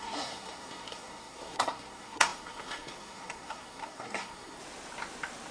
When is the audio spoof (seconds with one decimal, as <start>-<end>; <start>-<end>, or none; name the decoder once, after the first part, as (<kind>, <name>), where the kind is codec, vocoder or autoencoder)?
0.0-4.6 (codec, SNAC)